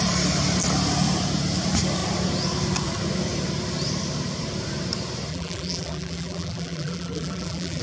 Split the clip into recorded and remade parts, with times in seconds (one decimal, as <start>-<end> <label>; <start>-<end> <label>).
0.0-5.3 recorded; 5.3-7.8 remade